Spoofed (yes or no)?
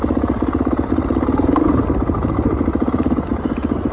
no